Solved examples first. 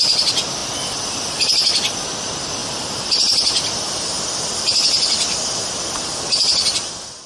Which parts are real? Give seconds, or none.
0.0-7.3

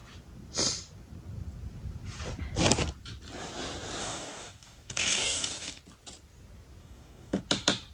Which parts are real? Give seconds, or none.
0.0-4.0; 5.8-6.8; 7.4-7.9